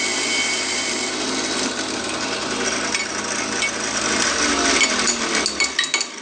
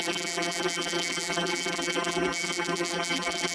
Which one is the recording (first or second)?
first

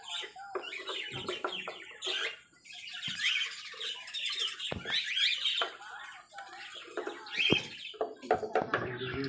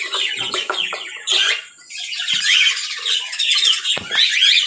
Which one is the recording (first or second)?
first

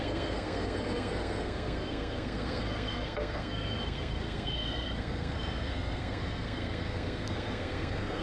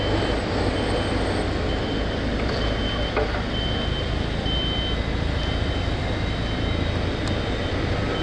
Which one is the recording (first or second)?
second